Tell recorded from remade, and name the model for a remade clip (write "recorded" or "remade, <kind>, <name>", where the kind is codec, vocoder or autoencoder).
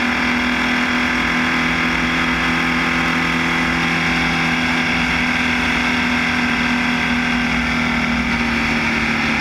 recorded